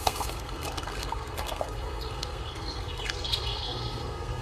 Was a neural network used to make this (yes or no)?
yes